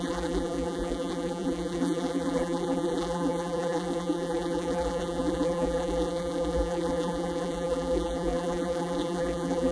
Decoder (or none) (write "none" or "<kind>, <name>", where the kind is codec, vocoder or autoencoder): vocoder, BigVGAN v2